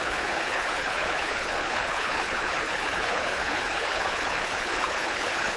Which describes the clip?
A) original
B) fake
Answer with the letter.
B